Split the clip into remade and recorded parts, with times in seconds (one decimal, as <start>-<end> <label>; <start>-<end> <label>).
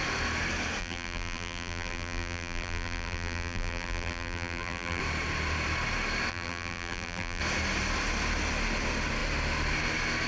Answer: 0.0-0.8 recorded; 0.8-5.0 remade; 5.0-6.3 recorded; 6.3-7.4 remade; 7.4-10.3 recorded